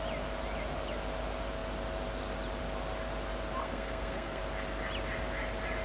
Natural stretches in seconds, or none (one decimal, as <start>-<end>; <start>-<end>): 0.0-3.6; 4.4-5.8